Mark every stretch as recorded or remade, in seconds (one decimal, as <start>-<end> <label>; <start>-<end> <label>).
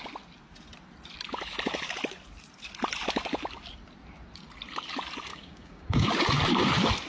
0.0-5.3 recorded; 5.3-6.1 remade; 6.1-7.1 recorded